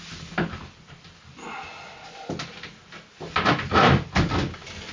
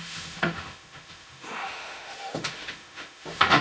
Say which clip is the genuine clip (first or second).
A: first